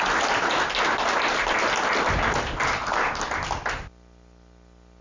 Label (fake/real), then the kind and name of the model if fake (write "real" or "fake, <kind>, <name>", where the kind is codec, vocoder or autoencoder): real